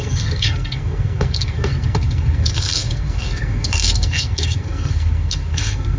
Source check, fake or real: fake